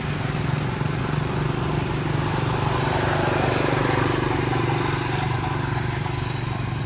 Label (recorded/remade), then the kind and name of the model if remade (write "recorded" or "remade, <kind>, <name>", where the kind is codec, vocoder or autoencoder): recorded